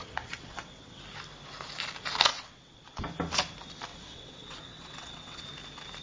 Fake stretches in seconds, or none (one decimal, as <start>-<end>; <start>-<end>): 0.0-1.0; 2.3-3.0; 3.9-5.4